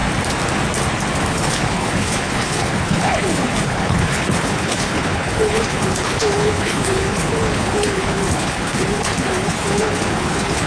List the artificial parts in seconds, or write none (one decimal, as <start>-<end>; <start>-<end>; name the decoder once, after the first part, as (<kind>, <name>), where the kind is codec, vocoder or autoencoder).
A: 1.3-10.7 (codec, HILCodec)